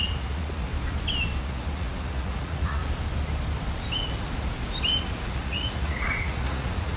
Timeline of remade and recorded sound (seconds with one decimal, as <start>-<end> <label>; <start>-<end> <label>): 0.0-0.7 remade; 0.7-1.4 recorded; 1.4-2.8 remade; 2.8-5.0 recorded; 5.0-7.0 remade